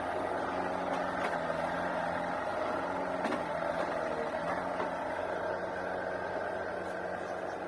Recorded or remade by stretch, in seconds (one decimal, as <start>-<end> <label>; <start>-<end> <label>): 0.0-7.7 recorded